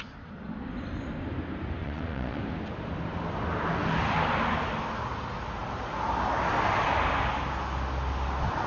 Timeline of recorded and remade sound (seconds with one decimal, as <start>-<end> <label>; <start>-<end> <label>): 0.0-1.8 recorded; 1.8-2.4 remade; 2.4-8.7 recorded